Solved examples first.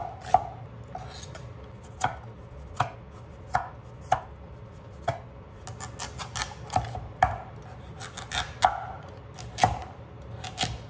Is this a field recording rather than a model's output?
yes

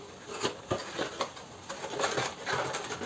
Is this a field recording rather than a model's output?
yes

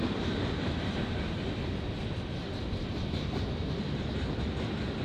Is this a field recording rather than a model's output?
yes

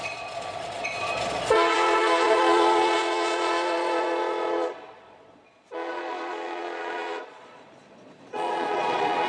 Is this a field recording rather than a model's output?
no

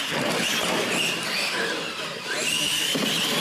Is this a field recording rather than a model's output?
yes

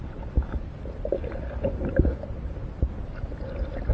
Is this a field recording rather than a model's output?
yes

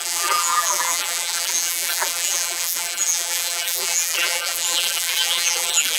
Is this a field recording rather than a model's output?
no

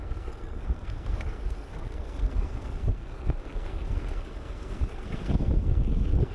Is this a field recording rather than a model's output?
no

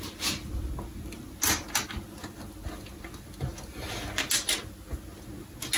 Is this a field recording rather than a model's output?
yes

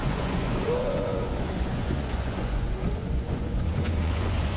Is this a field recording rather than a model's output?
no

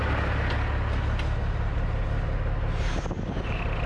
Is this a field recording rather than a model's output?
yes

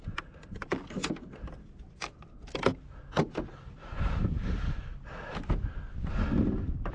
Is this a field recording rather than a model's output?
yes